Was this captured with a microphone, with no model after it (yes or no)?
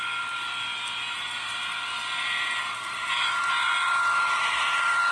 yes